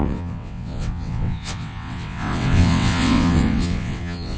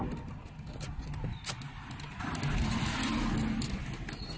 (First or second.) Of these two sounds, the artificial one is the first